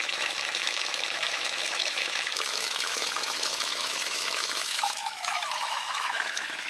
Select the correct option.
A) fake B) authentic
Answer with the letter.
A